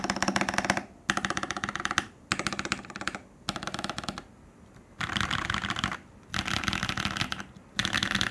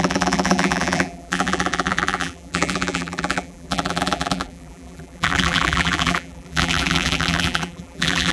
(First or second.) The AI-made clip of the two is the second